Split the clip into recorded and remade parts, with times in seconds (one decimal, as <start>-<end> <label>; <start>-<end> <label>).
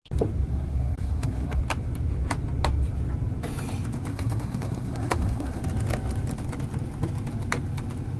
0.0-0.5 recorded; 0.5-1.6 remade; 1.6-4.1 recorded; 4.1-5.6 remade; 5.6-8.2 recorded